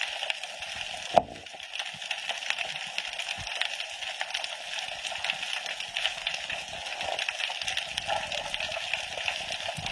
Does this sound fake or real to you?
real